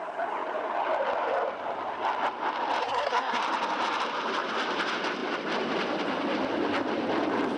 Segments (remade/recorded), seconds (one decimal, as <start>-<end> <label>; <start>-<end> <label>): 0.0-2.8 recorded; 2.8-3.4 remade; 3.4-7.6 recorded

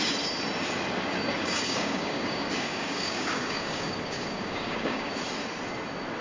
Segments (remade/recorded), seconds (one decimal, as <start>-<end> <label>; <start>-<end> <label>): 0.0-1.4 recorded; 1.4-5.1 remade; 5.1-6.2 recorded

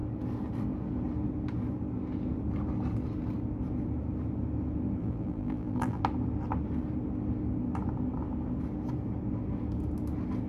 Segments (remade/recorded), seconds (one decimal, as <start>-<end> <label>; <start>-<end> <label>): 0.0-5.0 recorded; 5.0-6.0 remade; 6.0-10.5 recorded

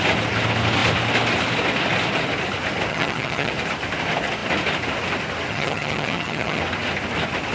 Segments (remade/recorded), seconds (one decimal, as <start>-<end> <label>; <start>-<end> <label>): 0.0-2.9 recorded; 2.9-3.5 remade; 3.5-5.5 recorded; 5.5-6.6 remade; 6.6-7.5 recorded